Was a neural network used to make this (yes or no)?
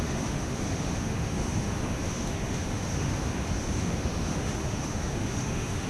yes